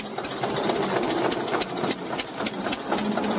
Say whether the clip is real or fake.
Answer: real